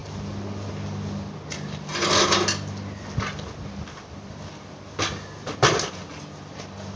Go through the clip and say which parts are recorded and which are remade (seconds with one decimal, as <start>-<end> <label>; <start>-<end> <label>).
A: 0.0-0.7 remade; 0.7-7.0 recorded